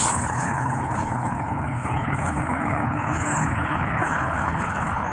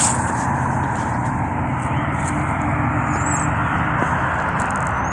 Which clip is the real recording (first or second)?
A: second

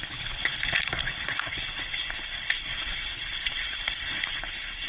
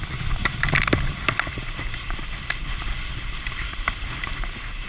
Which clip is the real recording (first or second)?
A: second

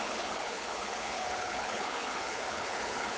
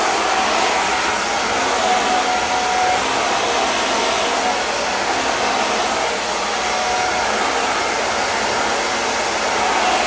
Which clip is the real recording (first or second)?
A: second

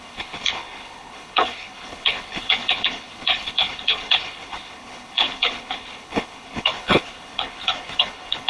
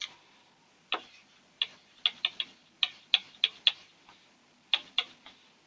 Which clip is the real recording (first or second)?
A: second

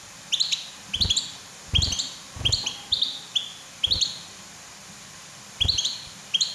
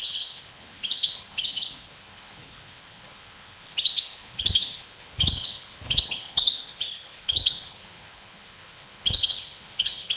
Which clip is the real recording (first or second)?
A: first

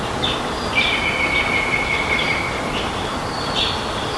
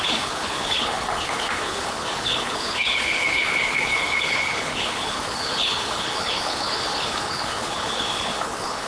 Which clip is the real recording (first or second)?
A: first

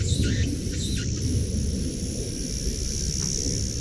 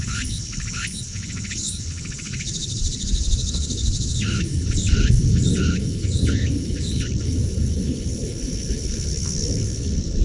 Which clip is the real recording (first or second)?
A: first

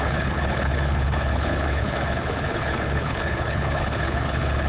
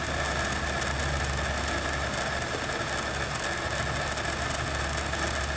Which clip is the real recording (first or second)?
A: second